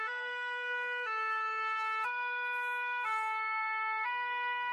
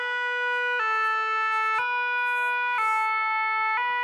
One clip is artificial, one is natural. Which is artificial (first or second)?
first